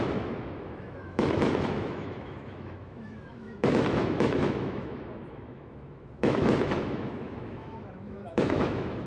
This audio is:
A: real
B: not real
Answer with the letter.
B